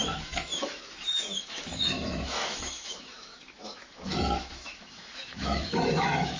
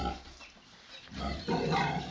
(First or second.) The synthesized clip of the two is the first